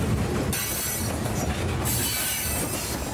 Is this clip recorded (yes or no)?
yes